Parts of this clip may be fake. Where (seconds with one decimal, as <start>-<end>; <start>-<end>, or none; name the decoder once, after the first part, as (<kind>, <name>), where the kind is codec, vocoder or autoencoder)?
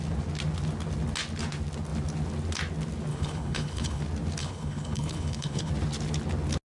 3.1-4.0 (codec, HILCodec); 4.4-5.7